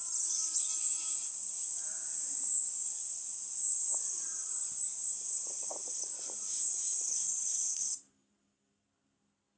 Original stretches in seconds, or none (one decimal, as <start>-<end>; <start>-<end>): 0.0-9.6